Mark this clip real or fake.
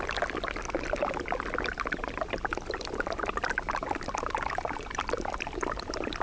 real